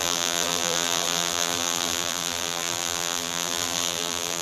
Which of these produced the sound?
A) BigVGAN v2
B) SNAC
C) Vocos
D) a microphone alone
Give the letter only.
A